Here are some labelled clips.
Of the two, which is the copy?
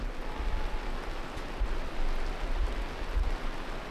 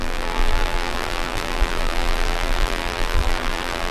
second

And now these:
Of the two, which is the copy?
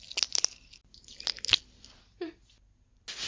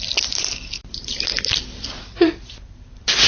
second